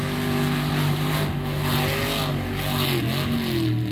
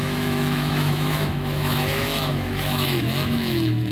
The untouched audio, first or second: first